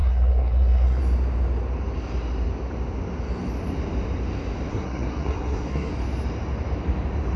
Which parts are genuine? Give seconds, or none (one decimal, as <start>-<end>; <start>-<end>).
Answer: 1.0-4.7; 5.9-7.4